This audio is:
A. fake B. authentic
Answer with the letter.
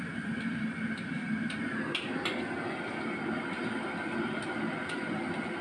B